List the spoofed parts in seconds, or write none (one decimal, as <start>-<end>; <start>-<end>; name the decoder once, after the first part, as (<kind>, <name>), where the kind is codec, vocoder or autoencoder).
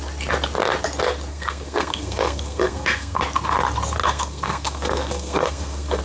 1.3-3.2 (codec, SNAC); 4.0-6.0